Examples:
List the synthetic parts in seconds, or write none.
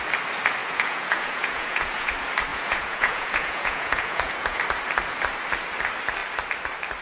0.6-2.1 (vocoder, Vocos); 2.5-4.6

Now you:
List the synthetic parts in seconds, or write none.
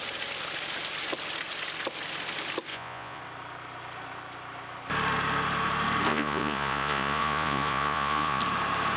2.7-3.2 (vocoder, Vocos); 6.1-8.4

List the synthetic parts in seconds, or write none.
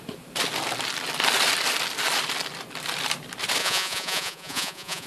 3.6-5.1 (vocoder, Vocos)